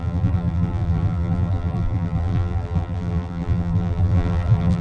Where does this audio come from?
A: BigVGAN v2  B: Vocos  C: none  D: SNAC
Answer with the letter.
A